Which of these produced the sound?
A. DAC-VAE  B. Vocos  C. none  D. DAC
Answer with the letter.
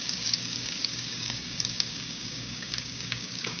D